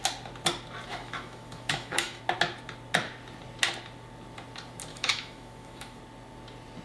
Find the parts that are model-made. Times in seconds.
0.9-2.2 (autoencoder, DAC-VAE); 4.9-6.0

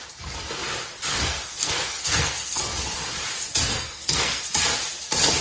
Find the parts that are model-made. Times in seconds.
1.1-2.6 (codec, SNAC); 3.7-4.4

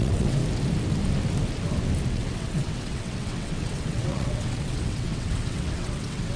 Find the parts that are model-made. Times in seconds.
0.0-0.4 (vocoder, WaveNeXt); 2.1-6.4